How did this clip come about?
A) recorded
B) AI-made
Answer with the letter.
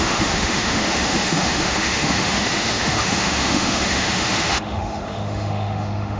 B